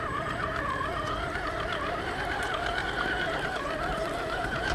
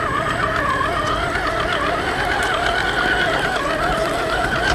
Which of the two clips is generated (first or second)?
first